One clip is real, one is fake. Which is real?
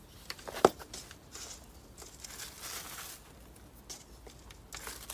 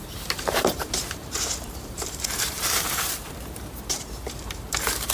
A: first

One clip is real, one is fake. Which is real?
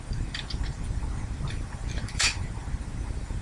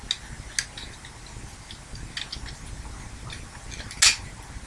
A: second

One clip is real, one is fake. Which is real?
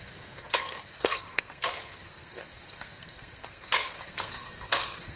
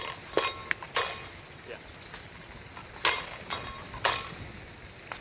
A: second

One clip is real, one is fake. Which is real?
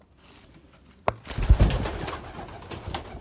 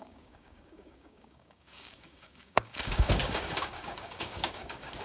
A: first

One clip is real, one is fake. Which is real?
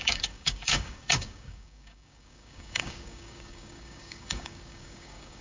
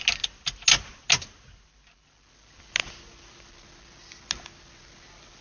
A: second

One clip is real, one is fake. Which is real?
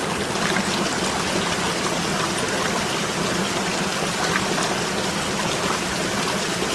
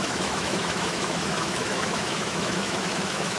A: first